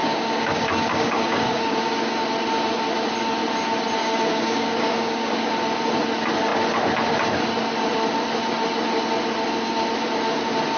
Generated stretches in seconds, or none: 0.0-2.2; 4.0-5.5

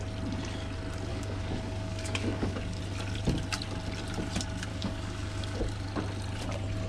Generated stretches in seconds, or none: 1.1-2.8; 4.7-5.6

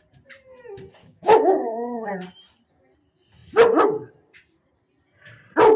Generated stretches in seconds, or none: 1.0-2.1